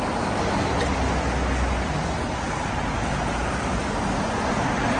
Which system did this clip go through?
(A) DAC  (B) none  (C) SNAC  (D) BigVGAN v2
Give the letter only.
B